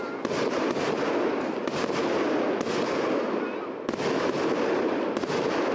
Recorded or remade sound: recorded